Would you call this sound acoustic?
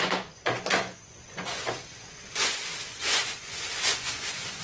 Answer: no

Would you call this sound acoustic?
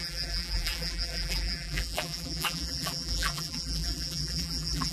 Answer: no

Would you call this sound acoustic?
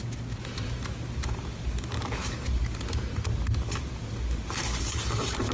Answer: yes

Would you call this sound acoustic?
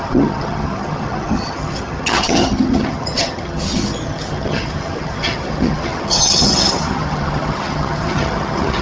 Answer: no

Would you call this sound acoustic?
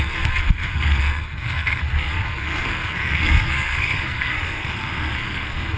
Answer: no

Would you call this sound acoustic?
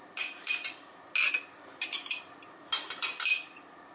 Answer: yes